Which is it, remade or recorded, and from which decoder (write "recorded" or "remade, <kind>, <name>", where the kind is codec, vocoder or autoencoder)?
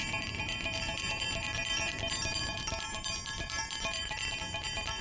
remade, vocoder, BigVGAN v2